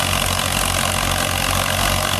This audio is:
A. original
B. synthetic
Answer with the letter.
A